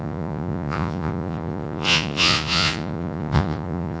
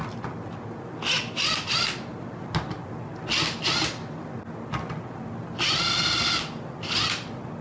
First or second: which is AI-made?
first